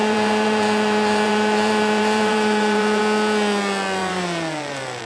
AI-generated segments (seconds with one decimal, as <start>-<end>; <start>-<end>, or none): 0.0-3.0; 4.0-5.0